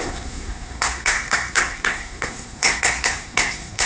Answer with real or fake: fake